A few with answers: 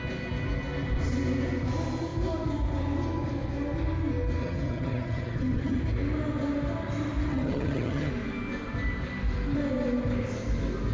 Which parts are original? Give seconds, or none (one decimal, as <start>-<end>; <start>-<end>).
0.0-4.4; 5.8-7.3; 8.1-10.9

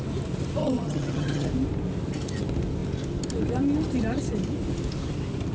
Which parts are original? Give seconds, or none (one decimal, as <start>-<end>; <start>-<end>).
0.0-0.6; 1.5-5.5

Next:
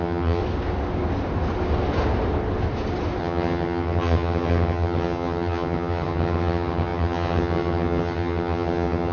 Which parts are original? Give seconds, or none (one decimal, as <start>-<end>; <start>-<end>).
0.4-3.2